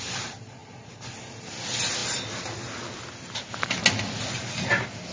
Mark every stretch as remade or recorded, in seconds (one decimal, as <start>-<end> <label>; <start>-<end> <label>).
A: 0.0-5.1 recorded